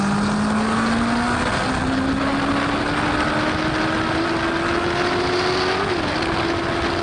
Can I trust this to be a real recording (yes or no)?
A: yes